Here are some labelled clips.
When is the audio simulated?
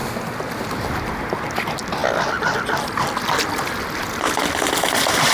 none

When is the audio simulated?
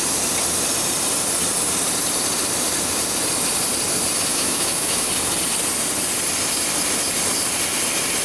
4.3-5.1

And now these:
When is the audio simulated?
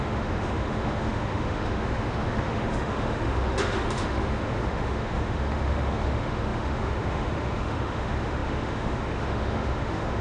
0.0-10.2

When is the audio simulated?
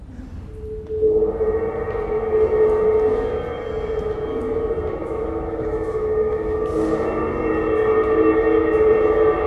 5.0-6.4